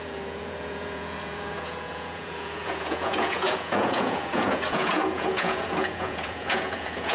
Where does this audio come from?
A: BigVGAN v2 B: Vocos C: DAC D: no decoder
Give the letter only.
B